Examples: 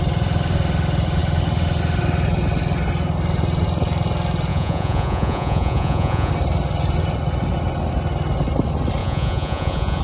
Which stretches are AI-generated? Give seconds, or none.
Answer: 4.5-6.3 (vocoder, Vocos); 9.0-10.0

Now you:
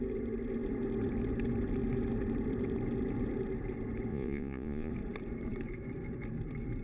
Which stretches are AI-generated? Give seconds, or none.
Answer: 4.1-4.9 (vocoder, Vocos)

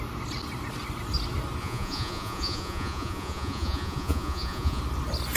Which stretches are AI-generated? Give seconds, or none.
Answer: 1.6-4.8 (vocoder, Vocos)